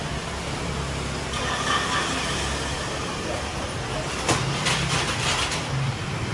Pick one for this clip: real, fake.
real